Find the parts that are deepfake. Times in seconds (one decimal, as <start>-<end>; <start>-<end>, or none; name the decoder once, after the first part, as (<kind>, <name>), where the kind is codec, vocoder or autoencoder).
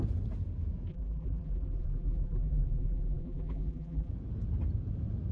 0.9-4.1 (vocoder, BigVGAN v2)